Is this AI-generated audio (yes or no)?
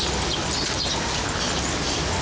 no